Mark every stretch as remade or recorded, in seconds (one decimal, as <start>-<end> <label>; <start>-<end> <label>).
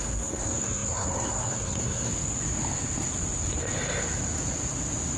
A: 0.0-2.1 remade; 2.1-5.2 recorded